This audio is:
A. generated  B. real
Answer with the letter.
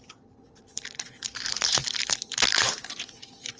A